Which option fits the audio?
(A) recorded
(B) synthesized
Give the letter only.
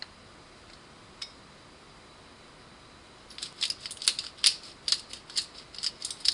A